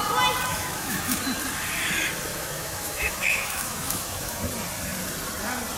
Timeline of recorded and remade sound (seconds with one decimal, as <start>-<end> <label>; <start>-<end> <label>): 0.0-0.5 recorded; 0.5-1.2 remade; 1.2-2.3 recorded; 2.3-4.4 remade; 4.4-5.8 recorded